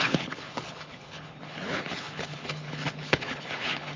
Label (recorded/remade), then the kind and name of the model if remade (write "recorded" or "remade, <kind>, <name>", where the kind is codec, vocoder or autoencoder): remade, codec, HILCodec